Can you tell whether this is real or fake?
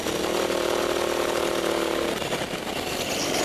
real